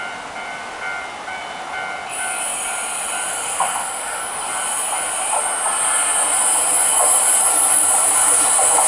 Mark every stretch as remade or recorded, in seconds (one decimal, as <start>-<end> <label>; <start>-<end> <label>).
0.0-3.3 recorded; 3.3-4.2 remade; 4.2-8.9 recorded